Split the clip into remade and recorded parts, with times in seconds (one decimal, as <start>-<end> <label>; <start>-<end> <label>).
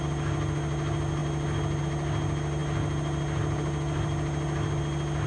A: 0.0-5.3 recorded